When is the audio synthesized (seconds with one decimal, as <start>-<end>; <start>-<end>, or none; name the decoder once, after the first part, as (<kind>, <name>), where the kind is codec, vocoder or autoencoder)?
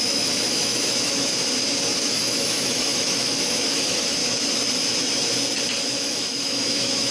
0.0-1.3 (autoencoder, DAC-VAE); 2.0-4.2; 5.9-7.1